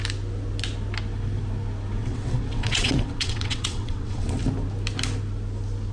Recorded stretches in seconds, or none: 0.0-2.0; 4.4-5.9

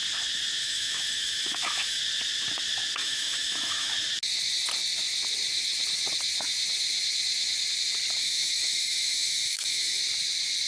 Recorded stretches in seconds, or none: 0.0-0.6; 2.0-3.0; 3.9-8.2; 10.0-10.7

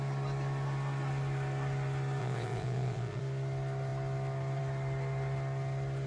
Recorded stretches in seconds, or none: 0.0-2.2; 3.2-6.1